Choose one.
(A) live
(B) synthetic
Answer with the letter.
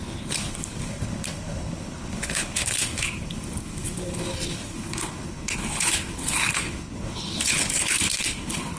B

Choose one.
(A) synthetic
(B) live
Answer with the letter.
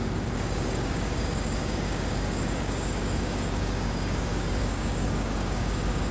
A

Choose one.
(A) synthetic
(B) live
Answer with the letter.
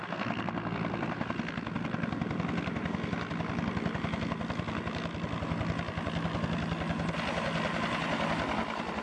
B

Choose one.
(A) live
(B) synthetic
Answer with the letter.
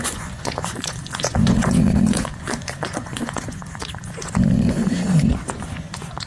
B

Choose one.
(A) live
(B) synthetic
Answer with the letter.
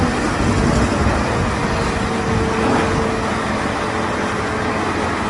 A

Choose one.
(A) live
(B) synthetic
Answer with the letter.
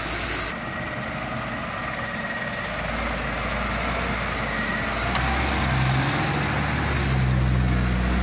A